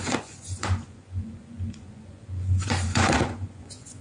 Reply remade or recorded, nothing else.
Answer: remade